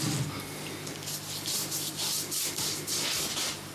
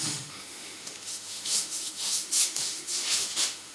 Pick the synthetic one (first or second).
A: second